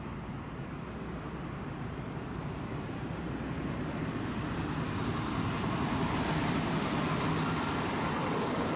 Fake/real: real